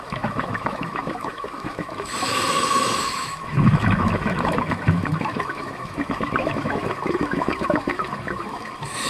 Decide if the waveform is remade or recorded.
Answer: remade